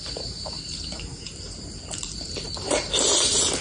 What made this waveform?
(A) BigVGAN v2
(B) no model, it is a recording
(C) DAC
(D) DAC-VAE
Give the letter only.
A